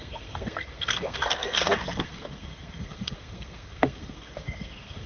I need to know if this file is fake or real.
fake